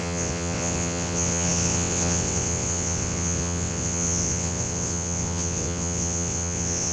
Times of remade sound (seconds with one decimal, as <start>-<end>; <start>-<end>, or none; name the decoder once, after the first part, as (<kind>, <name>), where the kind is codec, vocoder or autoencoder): 0.0-6.9 (vocoder, WaveNeXt)

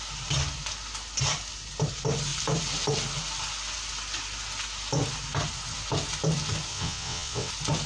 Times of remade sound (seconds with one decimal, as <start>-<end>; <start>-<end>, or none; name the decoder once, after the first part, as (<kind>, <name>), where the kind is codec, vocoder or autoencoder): 6.7-7.5 (vocoder, WaveNeXt)

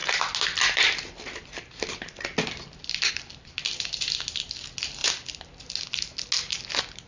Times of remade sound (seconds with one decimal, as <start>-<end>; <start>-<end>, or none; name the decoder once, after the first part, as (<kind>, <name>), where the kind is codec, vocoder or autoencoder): none

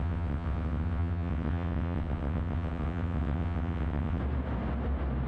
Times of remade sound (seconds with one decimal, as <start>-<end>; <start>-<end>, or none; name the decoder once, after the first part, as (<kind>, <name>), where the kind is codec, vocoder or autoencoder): 0.0-4.2 (vocoder, WaveNeXt)